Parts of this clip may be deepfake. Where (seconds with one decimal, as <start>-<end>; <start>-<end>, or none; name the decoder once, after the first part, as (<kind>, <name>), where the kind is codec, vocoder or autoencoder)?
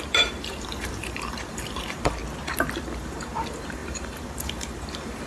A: 0.0-2.2 (vocoder, BigVGAN v2); 2.8-5.3